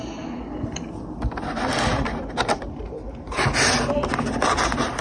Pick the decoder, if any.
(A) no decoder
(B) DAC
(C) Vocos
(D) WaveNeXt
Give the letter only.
A